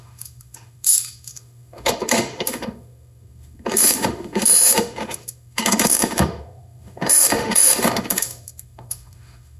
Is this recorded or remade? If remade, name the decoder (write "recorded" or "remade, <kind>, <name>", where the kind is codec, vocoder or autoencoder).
remade, autoencoder, DAC-VAE